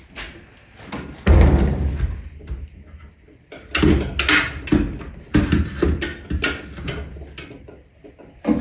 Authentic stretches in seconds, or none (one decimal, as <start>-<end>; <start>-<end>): 0.0-8.6